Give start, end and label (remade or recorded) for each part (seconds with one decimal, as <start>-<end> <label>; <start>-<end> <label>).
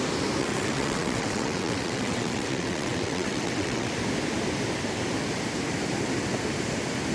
0.0-0.4 recorded; 0.4-3.9 remade; 3.9-7.1 recorded